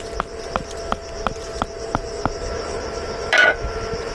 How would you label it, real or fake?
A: real